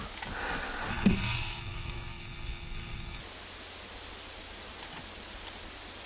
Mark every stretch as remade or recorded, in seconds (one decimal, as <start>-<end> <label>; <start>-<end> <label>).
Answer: 0.0-0.9 recorded; 0.9-3.2 remade; 3.2-6.1 recorded